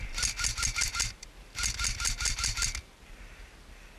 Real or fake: real